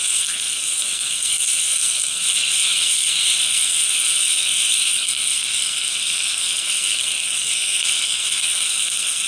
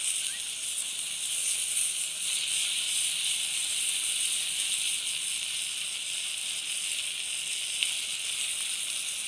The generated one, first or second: first